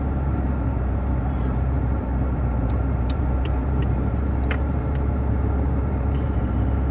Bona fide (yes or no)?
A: no